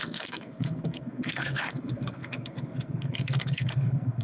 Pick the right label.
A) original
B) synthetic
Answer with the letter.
B